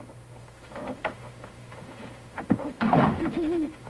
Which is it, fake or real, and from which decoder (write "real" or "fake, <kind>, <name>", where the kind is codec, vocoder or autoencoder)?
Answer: fake, autoencoder, DAC-VAE